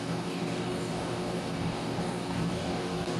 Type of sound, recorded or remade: remade